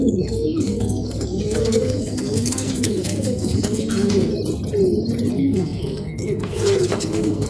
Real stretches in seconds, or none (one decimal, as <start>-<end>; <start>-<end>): 4.3-5.3